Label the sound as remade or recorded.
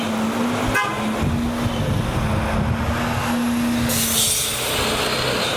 recorded